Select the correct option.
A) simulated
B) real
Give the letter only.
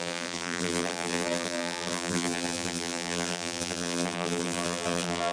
A